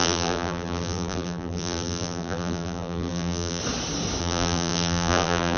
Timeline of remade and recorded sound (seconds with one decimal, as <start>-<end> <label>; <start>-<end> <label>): 0.0-3.6 remade; 3.6-4.2 recorded; 4.2-5.6 remade